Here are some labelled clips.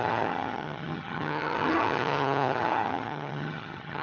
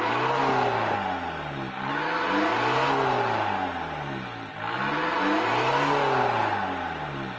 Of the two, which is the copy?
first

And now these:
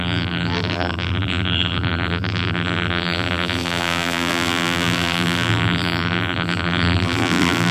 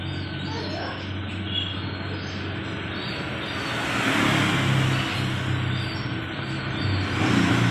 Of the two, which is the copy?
first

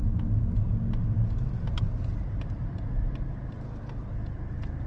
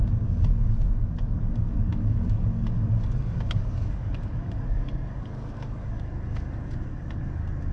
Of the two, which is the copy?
second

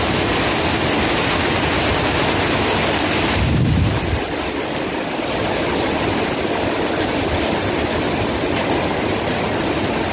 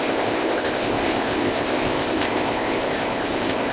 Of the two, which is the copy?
second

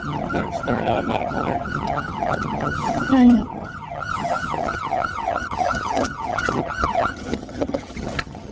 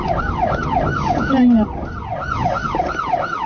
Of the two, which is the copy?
first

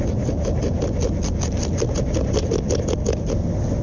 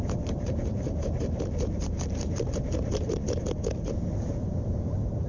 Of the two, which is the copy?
second